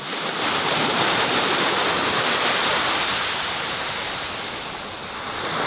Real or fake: real